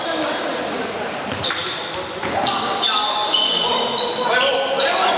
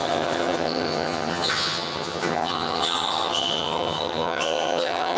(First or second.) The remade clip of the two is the second